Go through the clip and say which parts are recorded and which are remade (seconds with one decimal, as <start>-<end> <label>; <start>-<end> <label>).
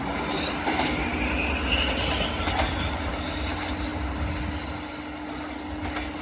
0.0-6.2 recorded